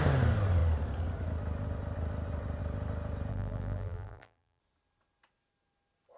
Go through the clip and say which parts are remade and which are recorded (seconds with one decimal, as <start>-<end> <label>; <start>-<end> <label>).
0.0-3.3 recorded; 3.3-4.6 remade; 4.6-6.2 recorded